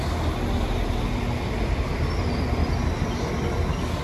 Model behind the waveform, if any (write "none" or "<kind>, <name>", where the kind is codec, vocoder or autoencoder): none